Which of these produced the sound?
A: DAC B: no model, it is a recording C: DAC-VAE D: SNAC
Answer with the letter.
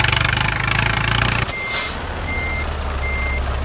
B